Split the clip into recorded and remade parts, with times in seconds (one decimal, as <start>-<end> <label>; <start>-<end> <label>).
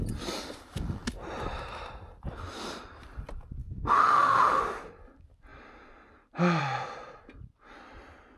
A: 0.0-3.6 recorded; 3.6-4.6 remade; 4.6-8.4 recorded